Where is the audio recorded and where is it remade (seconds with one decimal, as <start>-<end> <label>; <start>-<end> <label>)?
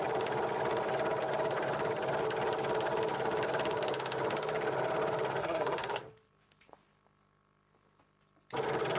0.0-5.4 recorded; 5.4-6.0 remade; 6.0-9.0 recorded